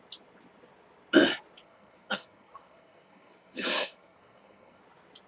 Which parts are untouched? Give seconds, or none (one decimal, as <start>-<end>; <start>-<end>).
0.0-1.6; 4.8-5.3